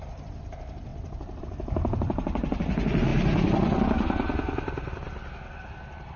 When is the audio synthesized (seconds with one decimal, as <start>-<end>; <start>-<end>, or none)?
none